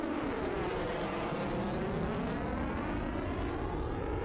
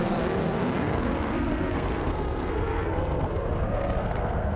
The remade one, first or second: second